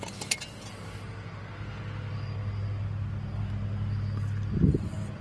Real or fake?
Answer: real